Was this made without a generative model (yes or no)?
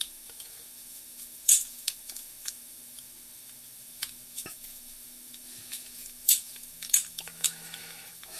no